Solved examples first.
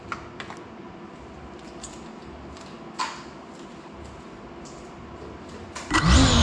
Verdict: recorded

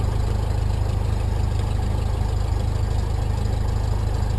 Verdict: recorded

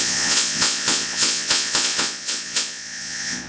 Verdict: remade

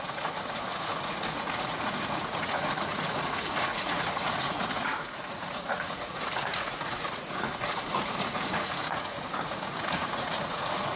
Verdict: remade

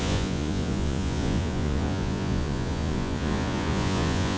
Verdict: remade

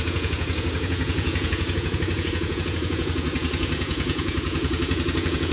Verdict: remade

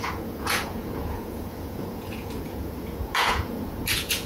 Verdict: remade